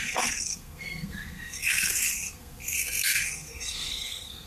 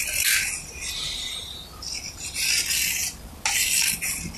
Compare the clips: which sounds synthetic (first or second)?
first